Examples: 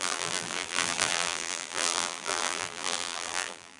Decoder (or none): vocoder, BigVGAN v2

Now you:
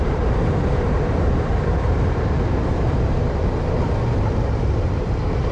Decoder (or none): vocoder, BigVGAN v2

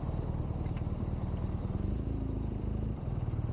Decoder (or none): vocoder, BigVGAN v2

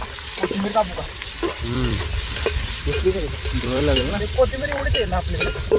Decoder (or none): vocoder, BigVGAN v2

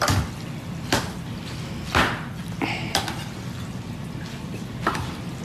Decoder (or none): none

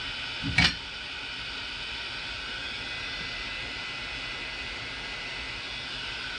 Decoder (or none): none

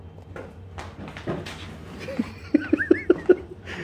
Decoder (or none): none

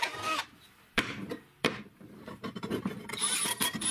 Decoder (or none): vocoder, BigVGAN v2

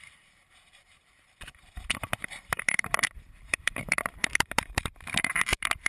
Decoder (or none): vocoder, BigVGAN v2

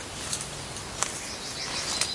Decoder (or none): none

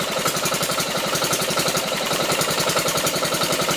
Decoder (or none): vocoder, BigVGAN v2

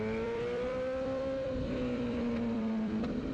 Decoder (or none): vocoder, BigVGAN v2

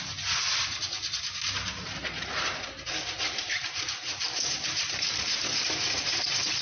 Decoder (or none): none